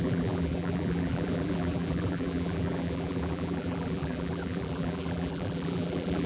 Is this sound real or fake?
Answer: fake